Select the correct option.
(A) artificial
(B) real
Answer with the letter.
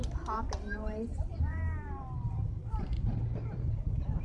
A